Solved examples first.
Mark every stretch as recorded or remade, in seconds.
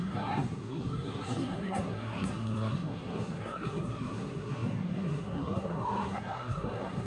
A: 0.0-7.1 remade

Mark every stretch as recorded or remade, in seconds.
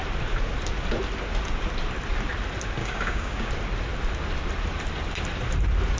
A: 0.0-2.8 recorded; 2.8-3.5 remade; 3.5-6.0 recorded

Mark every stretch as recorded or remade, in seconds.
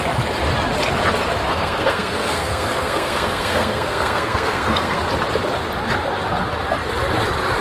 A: 0.0-1.5 recorded; 1.5-5.1 remade; 5.1-7.6 recorded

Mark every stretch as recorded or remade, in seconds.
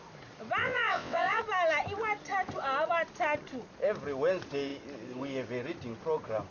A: 0.0-0.6 recorded; 0.6-1.4 remade; 1.4-6.5 recorded